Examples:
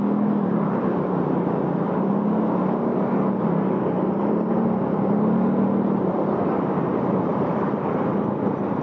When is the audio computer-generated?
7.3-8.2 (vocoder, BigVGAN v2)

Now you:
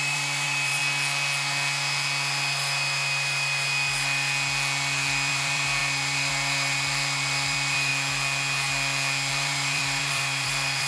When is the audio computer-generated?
0.0-0.8 (vocoder, BigVGAN v2); 5.3-7.9; 9.3-10.9